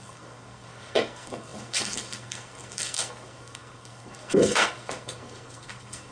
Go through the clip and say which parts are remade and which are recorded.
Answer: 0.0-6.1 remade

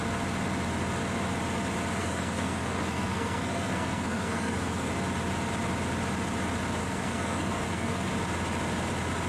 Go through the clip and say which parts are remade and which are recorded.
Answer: 0.0-2.0 recorded; 2.0-4.9 remade; 4.9-6.8 recorded; 6.8-8.1 remade; 8.1-9.3 recorded